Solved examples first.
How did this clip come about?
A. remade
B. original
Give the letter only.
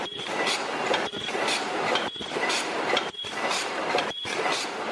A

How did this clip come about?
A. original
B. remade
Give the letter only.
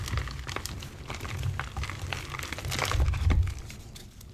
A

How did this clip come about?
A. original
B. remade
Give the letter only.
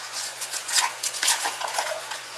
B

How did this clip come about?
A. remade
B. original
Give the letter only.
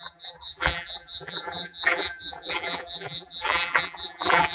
A